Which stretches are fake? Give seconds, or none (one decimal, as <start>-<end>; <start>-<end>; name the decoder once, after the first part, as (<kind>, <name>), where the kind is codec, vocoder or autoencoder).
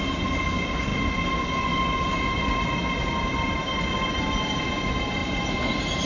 none